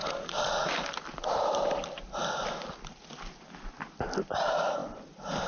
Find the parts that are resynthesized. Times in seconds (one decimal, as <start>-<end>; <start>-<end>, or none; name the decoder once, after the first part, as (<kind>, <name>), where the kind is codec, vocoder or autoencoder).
0.0-0.7 (vocoder, Vocos)